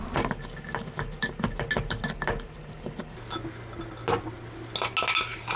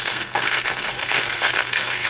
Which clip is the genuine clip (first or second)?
first